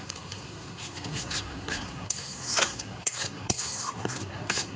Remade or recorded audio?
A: remade